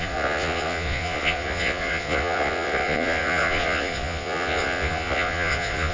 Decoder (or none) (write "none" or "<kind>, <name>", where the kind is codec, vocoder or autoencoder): vocoder, Vocos